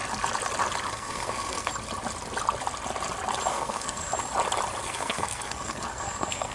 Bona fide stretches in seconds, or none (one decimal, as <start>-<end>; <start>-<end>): 0.0-0.9; 1.7-3.5; 4.1-4.8